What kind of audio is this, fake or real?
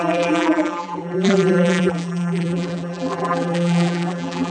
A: fake